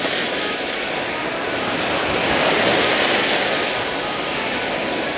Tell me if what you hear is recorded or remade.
recorded